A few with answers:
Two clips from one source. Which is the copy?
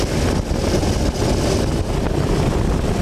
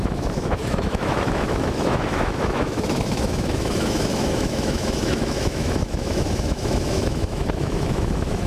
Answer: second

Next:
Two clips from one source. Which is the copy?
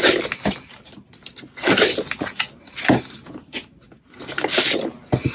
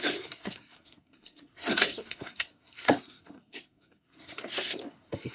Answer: second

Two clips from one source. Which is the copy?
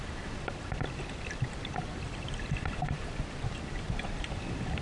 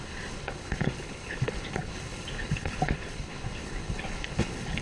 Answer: second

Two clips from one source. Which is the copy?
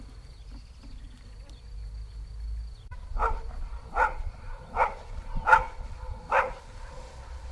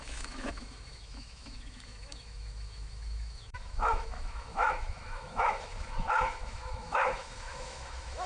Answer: second